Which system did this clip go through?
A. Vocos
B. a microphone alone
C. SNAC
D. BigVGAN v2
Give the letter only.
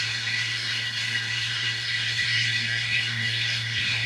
C